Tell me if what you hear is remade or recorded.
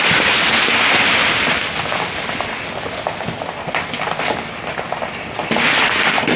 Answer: recorded